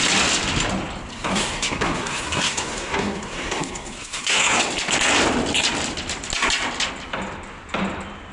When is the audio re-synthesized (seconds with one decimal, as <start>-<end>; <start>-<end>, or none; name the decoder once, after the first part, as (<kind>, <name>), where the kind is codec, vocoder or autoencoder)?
1.1-4.6 (codec, SNAC)